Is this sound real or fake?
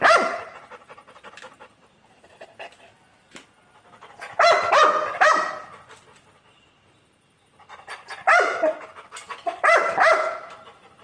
real